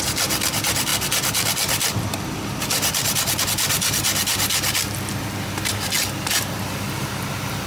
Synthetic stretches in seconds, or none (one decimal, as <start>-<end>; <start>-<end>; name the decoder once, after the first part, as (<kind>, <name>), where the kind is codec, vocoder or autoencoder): none